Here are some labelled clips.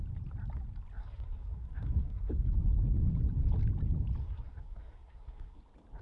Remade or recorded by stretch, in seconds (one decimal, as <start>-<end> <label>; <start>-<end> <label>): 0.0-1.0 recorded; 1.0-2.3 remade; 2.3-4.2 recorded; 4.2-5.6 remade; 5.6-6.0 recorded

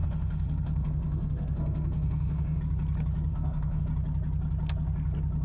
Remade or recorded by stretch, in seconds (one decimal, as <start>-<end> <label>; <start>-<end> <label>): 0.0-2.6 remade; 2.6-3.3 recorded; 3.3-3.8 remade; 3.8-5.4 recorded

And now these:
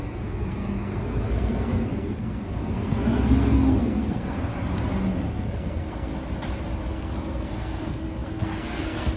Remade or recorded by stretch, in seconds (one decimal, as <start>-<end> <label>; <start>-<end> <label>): 0.0-4.5 remade; 4.5-5.3 recorded; 5.3-6.1 remade; 6.1-6.9 recorded; 6.9-9.2 remade